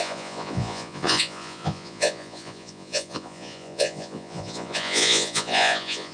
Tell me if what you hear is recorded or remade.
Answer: remade